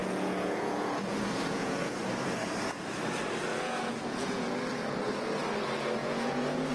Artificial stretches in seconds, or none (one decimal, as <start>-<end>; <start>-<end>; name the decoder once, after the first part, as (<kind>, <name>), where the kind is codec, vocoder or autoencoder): 0.0-2.0 (vocoder, Vocos); 3.5-4.5; 6.0-6.7